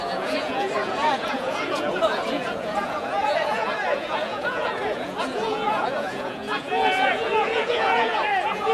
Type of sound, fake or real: fake